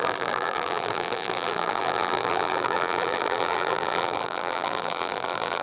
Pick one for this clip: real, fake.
fake